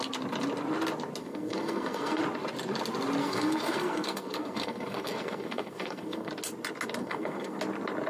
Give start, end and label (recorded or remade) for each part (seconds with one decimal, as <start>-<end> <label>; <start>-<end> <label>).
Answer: 0.0-1.2 recorded; 1.2-2.2 remade; 2.2-3.2 recorded; 3.2-6.3 remade; 6.3-7.0 recorded; 7.0-7.6 remade; 7.6-8.1 recorded